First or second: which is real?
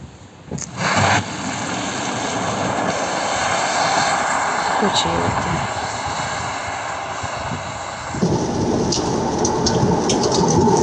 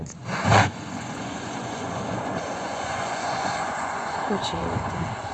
first